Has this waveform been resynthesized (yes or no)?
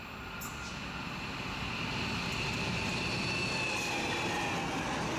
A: no